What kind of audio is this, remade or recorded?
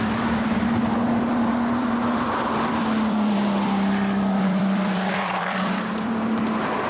remade